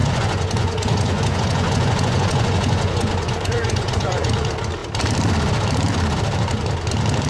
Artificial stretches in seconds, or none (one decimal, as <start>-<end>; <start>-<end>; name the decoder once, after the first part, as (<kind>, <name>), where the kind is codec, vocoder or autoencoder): 0.0-4.3 (vocoder, Vocos)